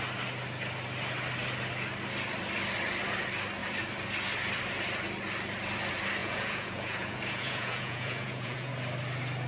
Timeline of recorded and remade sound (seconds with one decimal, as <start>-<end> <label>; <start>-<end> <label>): 0.0-6.2 recorded; 6.2-8.7 remade; 8.7-9.5 recorded